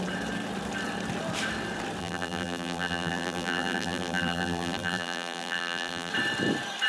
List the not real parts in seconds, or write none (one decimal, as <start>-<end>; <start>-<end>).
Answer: 2.0-6.1